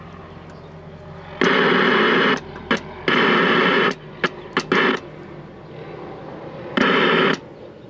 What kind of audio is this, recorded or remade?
recorded